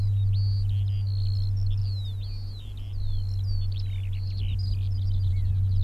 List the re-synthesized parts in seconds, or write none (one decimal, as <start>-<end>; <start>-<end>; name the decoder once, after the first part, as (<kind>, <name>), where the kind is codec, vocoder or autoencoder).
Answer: none